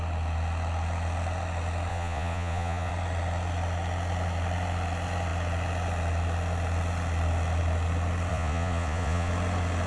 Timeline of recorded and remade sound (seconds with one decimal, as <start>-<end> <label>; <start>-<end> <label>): 0.0-1.9 recorded; 1.9-2.9 remade; 2.9-8.3 recorded; 8.3-9.3 remade; 9.3-9.9 recorded